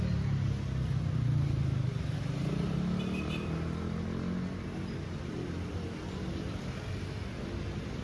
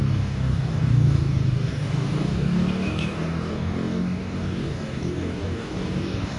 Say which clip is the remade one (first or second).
second